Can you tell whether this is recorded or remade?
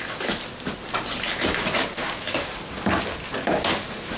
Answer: recorded